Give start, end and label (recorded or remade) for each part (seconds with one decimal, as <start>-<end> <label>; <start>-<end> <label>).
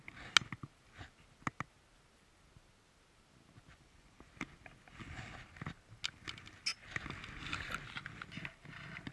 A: 0.0-3.7 recorded; 3.7-4.3 remade; 4.3-9.1 recorded